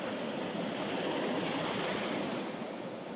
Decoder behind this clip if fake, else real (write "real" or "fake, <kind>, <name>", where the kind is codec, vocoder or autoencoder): real